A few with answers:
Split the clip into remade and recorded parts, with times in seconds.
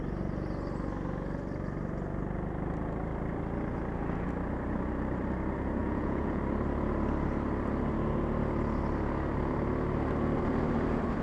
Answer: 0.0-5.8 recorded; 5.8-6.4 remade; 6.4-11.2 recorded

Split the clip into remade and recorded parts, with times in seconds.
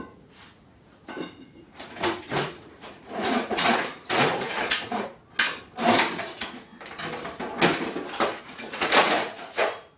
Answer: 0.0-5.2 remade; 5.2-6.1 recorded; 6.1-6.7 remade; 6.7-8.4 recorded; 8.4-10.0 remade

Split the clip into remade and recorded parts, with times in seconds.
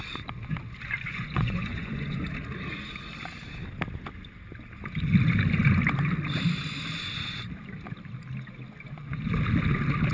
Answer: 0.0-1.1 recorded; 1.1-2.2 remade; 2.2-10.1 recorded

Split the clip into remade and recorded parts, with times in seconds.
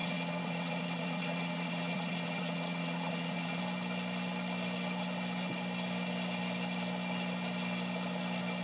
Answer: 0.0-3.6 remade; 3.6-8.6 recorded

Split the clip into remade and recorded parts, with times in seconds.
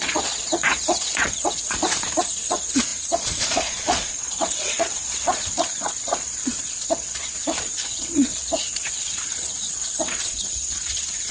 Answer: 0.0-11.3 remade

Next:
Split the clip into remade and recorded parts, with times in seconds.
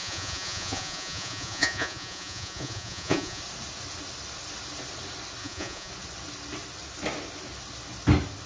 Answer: 0.0-3.4 remade; 3.4-5.4 recorded; 5.4-5.9 remade; 5.9-8.5 recorded